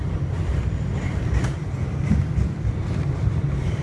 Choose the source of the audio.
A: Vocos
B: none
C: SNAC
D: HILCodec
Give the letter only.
B